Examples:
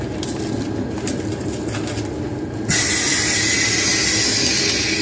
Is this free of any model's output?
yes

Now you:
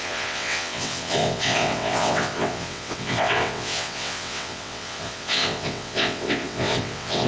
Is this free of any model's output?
no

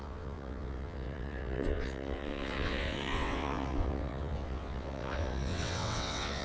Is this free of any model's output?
no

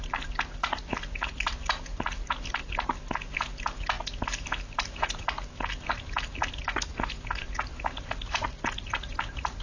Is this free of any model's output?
yes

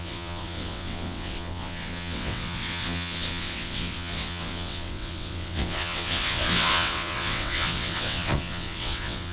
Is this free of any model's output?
no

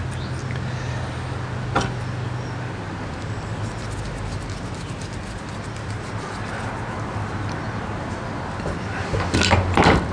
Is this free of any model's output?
yes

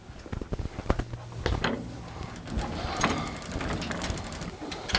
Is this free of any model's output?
yes